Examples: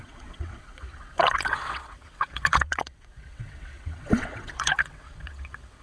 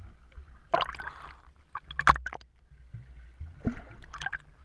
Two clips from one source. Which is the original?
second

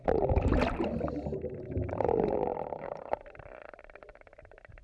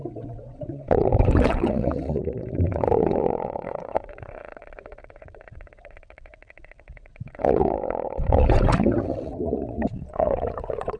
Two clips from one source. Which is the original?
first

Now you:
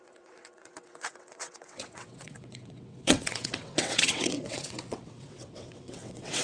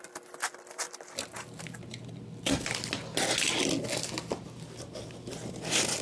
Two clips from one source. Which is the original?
second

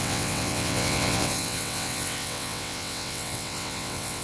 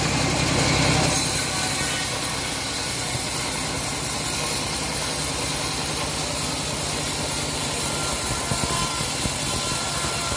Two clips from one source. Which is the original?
second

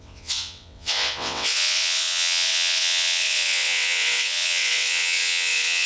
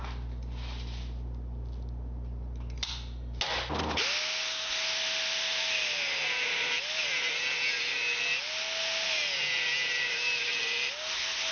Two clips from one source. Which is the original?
second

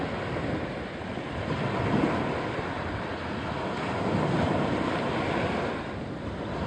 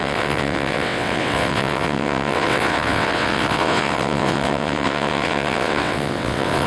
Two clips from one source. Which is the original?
first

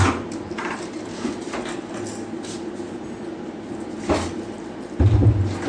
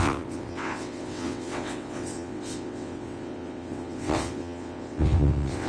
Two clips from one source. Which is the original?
first